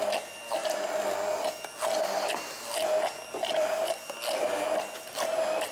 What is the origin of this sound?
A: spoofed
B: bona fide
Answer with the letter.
B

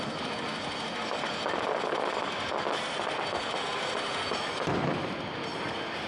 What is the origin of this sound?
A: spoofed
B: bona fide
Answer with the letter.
B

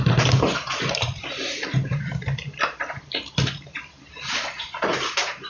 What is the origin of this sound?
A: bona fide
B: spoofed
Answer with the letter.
B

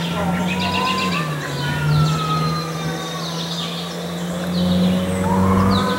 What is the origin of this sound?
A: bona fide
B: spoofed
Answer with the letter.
A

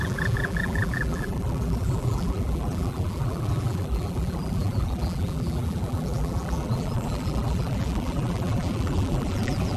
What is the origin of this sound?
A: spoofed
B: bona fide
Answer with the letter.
A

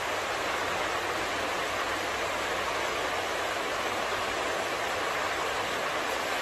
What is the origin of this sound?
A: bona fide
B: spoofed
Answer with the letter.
A